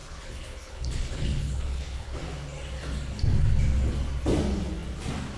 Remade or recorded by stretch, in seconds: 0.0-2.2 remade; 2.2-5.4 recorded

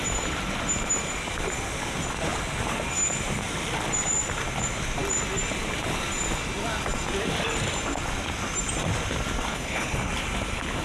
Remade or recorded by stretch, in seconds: 0.0-9.5 recorded; 9.5-10.1 remade; 10.1-10.8 recorded